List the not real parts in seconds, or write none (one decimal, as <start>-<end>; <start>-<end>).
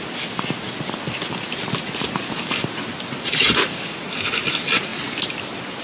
none